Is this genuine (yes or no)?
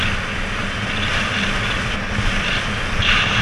yes